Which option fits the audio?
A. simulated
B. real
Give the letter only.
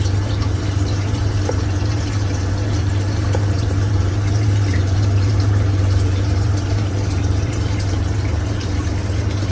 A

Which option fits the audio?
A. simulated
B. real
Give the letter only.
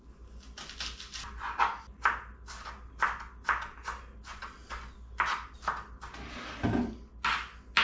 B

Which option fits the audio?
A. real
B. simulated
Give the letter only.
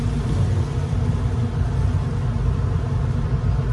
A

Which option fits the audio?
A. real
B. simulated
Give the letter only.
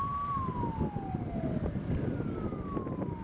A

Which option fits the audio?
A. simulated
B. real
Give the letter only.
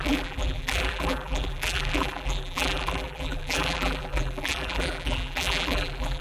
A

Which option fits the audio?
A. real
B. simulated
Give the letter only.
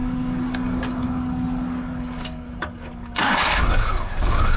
B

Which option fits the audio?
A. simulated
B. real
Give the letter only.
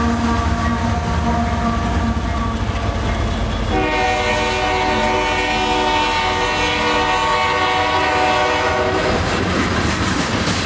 B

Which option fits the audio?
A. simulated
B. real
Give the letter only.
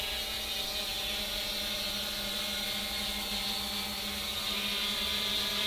B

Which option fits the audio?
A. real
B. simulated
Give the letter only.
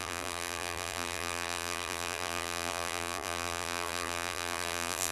B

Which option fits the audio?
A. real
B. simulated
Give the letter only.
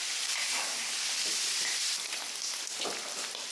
A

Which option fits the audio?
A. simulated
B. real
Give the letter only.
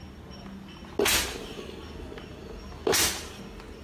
B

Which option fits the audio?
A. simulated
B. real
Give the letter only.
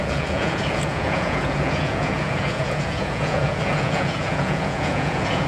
A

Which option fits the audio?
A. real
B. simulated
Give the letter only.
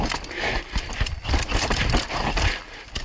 A